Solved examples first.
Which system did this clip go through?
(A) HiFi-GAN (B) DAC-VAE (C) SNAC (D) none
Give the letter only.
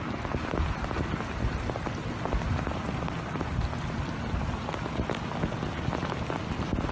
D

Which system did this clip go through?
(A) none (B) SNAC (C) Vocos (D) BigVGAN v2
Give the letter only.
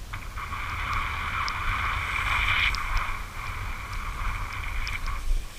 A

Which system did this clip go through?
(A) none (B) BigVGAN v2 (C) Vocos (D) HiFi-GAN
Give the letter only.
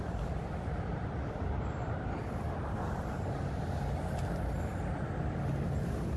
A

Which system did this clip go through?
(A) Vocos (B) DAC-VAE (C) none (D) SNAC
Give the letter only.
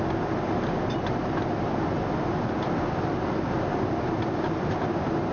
C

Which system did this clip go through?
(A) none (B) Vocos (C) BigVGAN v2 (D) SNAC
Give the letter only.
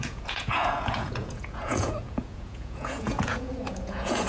B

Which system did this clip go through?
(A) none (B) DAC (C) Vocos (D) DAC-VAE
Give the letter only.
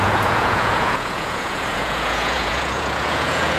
C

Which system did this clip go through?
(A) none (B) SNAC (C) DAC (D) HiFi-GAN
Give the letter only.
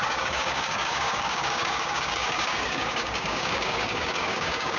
C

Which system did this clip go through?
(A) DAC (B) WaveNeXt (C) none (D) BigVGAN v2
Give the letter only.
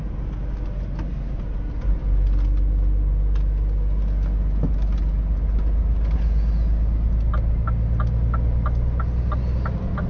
C